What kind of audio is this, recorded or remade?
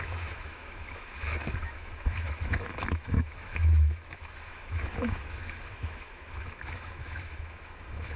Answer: remade